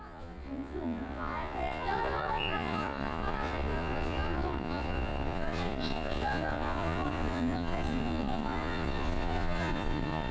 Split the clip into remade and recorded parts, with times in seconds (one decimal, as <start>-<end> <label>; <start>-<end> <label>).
0.0-10.3 remade